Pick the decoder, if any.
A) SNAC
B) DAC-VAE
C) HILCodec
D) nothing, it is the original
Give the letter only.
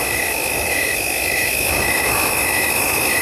B